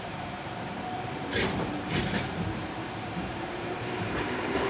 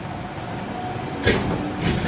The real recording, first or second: second